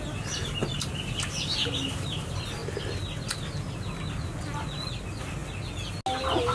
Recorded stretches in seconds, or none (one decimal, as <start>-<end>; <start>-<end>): 0.0-6.5